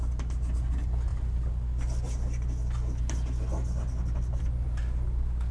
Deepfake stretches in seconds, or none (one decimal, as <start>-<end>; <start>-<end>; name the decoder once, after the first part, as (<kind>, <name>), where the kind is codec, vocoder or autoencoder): none